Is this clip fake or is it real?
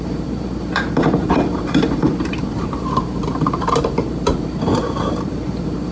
fake